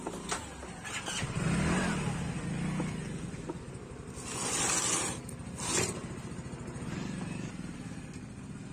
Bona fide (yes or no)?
yes